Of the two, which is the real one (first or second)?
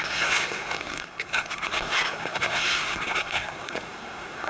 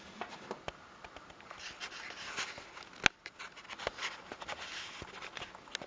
second